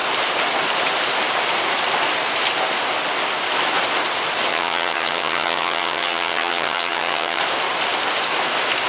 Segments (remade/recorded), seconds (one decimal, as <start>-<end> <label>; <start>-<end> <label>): 0.0-4.5 recorded; 4.5-7.4 remade; 7.4-8.9 recorded